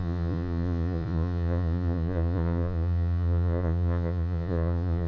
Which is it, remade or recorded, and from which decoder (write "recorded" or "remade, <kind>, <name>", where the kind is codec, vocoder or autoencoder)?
remade, vocoder, Vocos